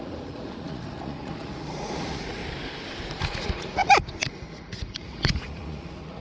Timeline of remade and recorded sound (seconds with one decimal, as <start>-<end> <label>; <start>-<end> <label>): 0.0-2.4 remade; 2.4-3.2 recorded; 3.2-3.8 remade; 3.8-4.3 recorded; 4.3-6.2 remade